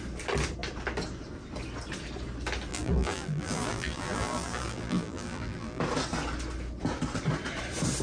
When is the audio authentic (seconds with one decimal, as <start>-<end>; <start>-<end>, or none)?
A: 0.0-2.7; 5.8-8.0